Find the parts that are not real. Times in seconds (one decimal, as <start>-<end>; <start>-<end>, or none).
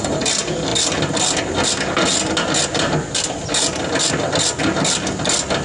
none